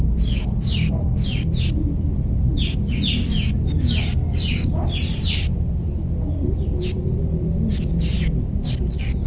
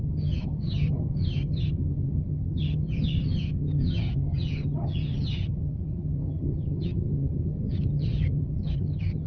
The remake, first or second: second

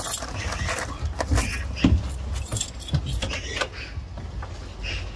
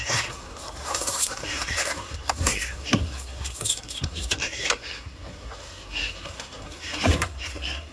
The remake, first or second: second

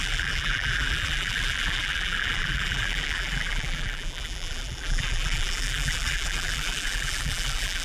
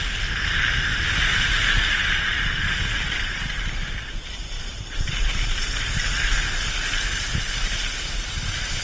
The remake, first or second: first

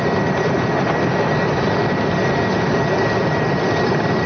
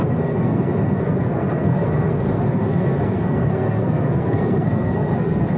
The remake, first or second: second